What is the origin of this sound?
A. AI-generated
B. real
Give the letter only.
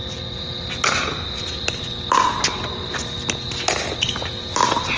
B